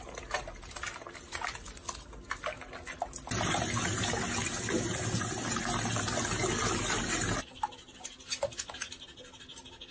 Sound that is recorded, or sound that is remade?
recorded